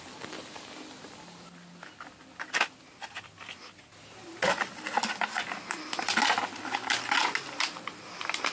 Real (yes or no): yes